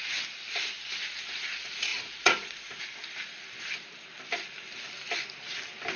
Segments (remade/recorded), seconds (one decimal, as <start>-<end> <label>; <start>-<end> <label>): 0.0-1.9 recorded; 1.9-2.8 remade; 2.8-6.0 recorded